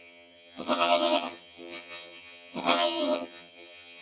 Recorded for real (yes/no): no